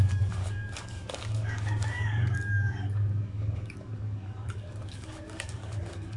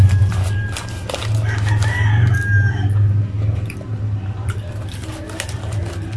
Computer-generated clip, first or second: first